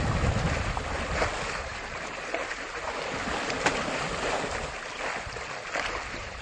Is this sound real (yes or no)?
yes